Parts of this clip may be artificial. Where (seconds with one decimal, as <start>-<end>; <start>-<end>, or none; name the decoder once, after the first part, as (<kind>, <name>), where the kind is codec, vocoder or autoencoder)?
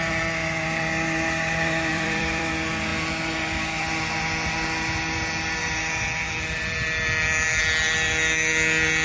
1.9-2.5 (vocoder, BigVGAN v2)